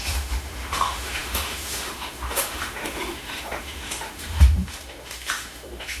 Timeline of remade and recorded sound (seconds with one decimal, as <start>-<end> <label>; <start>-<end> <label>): 0.0-6.0 remade